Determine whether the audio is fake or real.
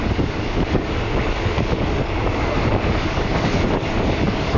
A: fake